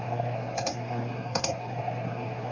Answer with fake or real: fake